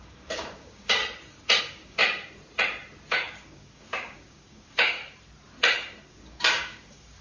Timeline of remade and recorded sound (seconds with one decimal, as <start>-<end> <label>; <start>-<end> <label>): 0.0-1.0 remade; 1.0-1.6 recorded; 1.6-2.0 remade; 2.0-3.1 recorded; 3.1-5.0 remade; 5.0-6.1 recorded; 6.1-7.2 remade